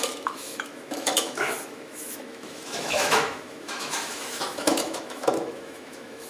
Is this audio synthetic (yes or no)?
yes